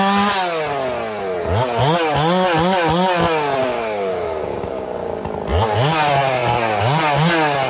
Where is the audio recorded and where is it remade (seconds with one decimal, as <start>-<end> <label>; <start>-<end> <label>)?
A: 0.0-3.6 recorded; 3.6-5.2 remade; 5.2-7.7 recorded